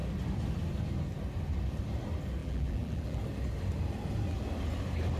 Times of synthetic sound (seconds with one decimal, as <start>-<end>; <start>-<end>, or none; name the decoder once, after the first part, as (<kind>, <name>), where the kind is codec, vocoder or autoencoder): 2.4-3.2 (vocoder, BigVGAN v2)